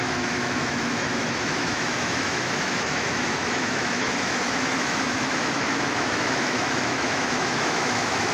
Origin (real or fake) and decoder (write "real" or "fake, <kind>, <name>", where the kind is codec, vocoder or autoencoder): fake, autoencoder, DAC-VAE